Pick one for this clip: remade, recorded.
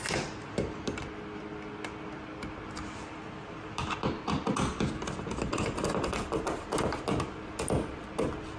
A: recorded